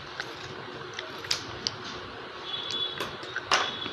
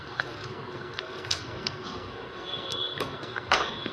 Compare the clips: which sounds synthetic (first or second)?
second